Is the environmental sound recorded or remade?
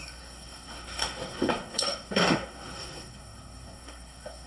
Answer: remade